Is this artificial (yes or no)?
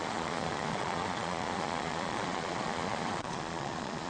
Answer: yes